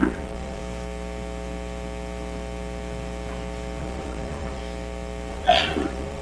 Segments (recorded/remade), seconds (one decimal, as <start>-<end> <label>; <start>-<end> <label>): 0.0-0.6 remade; 0.6-3.8 recorded; 3.8-4.6 remade; 4.6-5.3 recorded; 5.3-6.2 remade